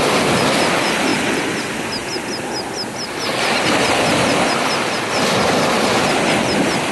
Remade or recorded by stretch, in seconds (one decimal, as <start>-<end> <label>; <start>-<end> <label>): 0.0-1.1 recorded; 1.1-1.6 remade; 1.6-6.9 recorded